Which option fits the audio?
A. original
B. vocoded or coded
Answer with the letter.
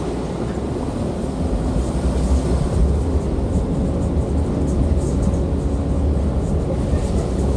A